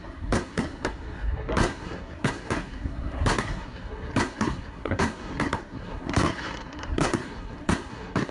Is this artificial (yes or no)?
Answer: yes